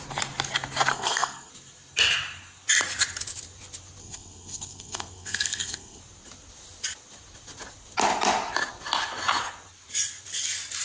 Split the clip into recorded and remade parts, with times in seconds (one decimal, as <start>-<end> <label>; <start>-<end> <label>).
0.0-0.9 recorded; 0.9-1.5 remade; 1.5-4.0 recorded; 4.0-6.0 remade; 6.0-10.8 recorded